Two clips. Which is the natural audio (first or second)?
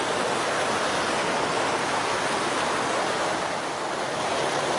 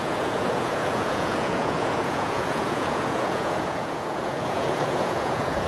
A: first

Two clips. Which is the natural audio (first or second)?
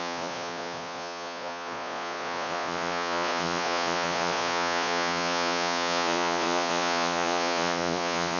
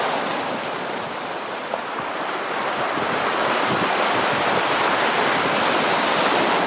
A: second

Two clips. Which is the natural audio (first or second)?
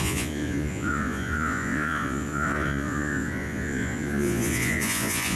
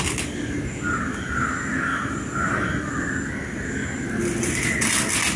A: second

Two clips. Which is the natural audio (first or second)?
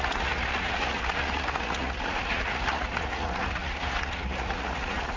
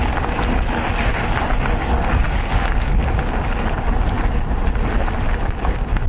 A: second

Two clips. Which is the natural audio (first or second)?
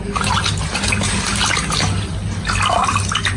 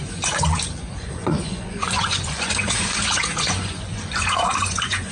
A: first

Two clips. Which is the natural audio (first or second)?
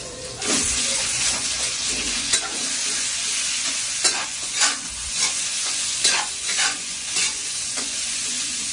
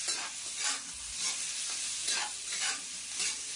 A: second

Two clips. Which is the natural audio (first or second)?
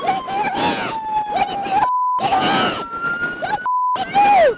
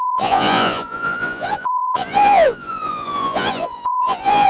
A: first